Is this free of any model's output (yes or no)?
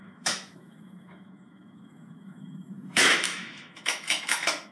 no